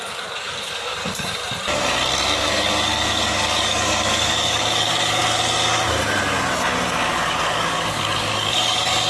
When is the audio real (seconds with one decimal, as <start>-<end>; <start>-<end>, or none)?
1.4-2.4; 5.2-7.1